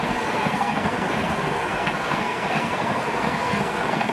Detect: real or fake fake